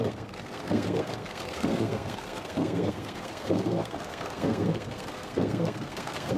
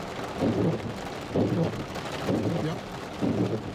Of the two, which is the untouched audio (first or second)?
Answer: second